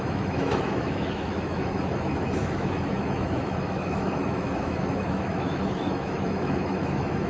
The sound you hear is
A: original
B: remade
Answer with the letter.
B